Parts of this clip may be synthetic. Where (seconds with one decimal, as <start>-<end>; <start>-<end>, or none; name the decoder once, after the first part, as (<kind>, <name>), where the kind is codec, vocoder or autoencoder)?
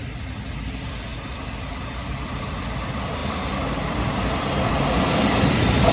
none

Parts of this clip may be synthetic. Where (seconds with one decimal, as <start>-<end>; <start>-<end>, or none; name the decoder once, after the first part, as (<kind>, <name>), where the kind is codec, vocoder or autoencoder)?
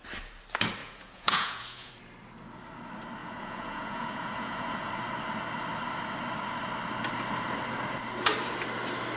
0.8-1.9 (vocoder, Vocos); 3.2-4.9